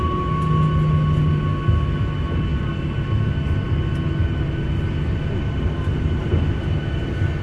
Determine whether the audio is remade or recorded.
recorded